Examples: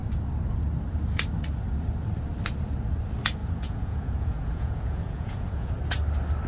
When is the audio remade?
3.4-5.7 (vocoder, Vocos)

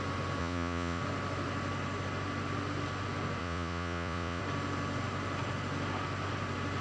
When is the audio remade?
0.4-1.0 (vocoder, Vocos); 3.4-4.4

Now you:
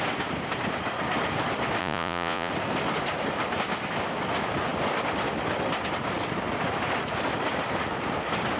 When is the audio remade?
1.8-2.5 (vocoder, Vocos)